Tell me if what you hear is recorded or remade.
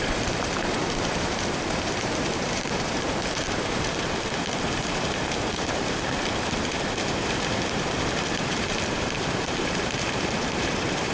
remade